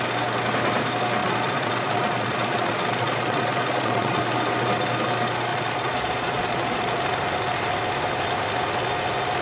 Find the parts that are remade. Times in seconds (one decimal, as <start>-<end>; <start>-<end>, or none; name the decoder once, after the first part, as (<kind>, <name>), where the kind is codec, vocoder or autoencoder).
1.2-4.2 (vocoder, Vocos); 5.5-7.0